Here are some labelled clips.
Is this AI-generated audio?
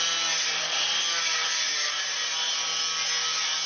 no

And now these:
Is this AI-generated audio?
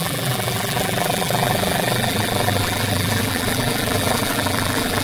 yes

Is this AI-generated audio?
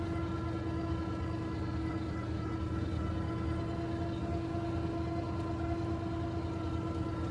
no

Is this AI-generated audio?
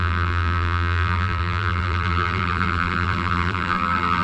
yes